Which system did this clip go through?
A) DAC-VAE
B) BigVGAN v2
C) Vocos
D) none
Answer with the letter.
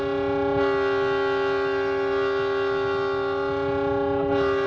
D